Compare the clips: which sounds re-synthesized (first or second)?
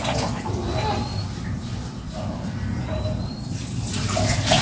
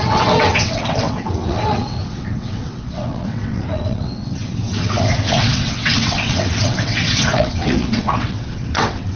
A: second